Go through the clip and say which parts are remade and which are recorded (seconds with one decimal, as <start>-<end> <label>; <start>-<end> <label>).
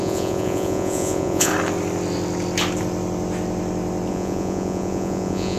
0.0-1.5 remade; 1.5-4.1 recorded; 4.1-5.6 remade